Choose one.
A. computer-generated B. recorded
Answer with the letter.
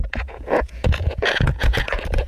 A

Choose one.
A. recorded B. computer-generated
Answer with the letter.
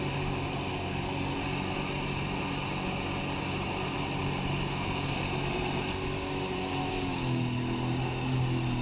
A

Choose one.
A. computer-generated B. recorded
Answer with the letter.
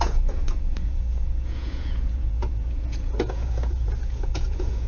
A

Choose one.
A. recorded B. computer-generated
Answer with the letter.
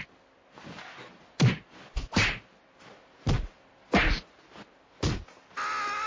A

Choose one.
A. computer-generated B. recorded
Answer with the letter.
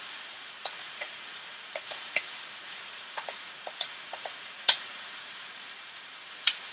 A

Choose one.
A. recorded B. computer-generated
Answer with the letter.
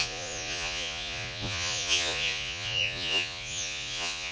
B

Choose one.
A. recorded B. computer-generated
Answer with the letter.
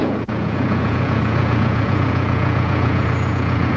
B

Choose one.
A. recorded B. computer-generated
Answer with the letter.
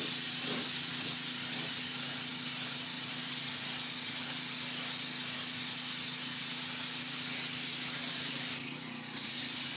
A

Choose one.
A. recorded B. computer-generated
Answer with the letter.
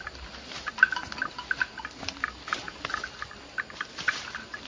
A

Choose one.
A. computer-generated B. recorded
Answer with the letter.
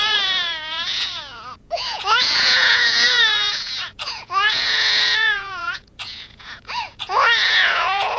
A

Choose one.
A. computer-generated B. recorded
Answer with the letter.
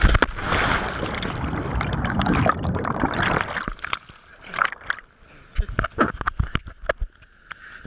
B